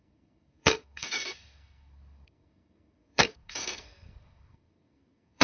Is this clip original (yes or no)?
no